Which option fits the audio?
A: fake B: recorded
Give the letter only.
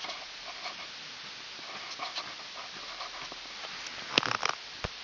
B